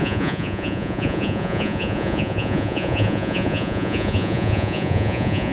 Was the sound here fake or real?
fake